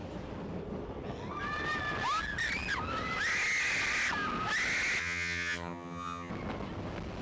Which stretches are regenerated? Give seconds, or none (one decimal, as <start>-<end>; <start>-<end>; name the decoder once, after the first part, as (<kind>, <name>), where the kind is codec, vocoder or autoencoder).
5.0-6.3 (vocoder, HiFi-GAN)